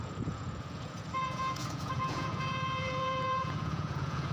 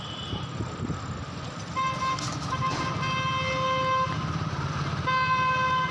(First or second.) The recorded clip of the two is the second